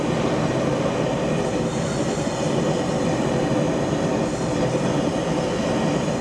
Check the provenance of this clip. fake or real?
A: real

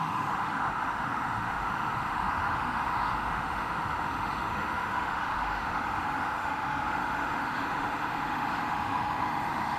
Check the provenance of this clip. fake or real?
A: fake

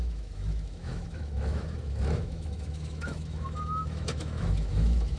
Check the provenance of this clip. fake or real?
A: fake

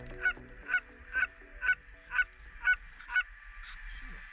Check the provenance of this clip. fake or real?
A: real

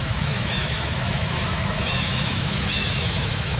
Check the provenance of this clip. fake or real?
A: fake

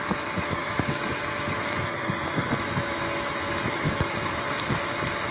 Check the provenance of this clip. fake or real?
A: fake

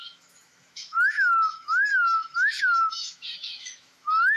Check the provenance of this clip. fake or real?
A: fake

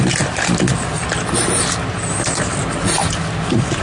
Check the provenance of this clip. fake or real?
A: real